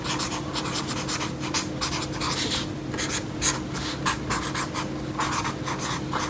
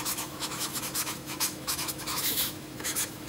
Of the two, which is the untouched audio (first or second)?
first